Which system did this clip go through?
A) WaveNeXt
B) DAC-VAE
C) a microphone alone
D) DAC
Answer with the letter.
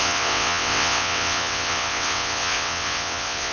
A